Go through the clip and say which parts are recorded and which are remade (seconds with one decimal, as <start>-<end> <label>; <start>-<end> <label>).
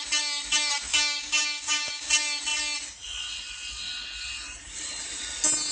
0.0-0.9 recorded; 0.9-2.1 remade; 2.1-5.7 recorded